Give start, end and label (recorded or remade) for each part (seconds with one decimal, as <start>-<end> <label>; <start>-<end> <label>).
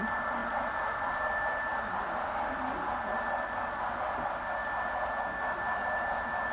0.0-0.4 recorded; 0.4-1.1 remade; 1.1-6.5 recorded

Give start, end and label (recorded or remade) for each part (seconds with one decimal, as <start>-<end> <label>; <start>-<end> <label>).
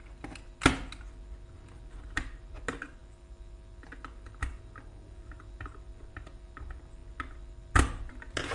0.0-8.5 recorded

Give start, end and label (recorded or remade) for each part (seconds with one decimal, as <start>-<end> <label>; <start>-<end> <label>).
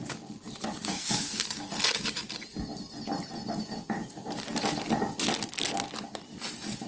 0.0-0.9 recorded; 0.9-1.7 remade; 1.7-6.9 recorded